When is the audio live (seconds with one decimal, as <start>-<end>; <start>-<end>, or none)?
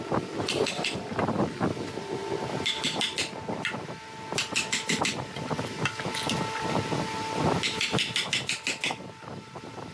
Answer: 0.0-9.9